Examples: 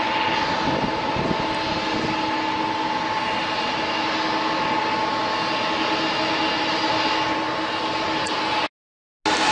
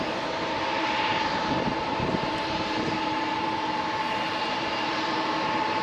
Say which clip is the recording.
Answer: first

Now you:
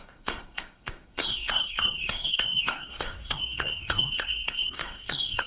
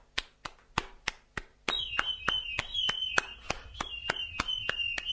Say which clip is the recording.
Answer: second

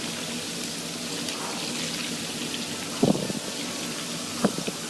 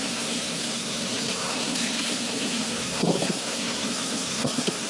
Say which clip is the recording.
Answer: first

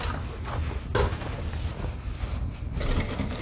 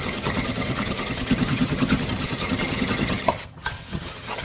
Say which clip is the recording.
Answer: first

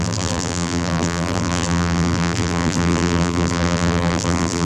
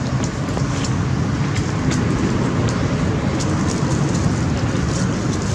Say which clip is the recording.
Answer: second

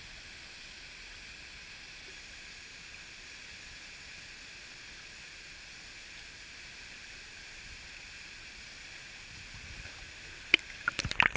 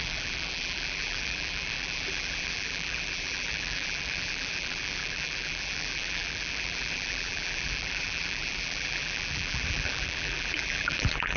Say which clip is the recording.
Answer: first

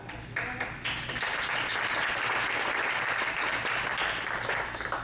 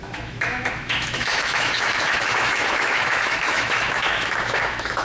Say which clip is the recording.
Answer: first